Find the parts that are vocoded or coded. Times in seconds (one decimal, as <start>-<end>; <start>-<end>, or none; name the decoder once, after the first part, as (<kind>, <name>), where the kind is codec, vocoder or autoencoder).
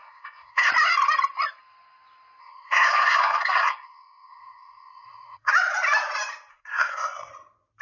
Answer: 0.0-0.7 (codec, SNAC); 2.4-5.5; 6.5-7.3